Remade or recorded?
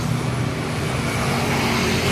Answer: recorded